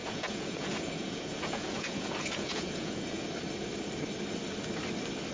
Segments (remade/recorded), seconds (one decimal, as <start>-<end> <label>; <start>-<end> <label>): 0.0-3.2 remade; 3.2-5.3 recorded